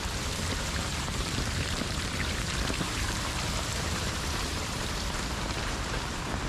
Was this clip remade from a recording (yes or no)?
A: yes